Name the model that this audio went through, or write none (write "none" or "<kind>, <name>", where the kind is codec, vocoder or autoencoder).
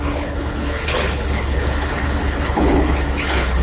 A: codec, HILCodec